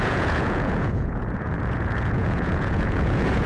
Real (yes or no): no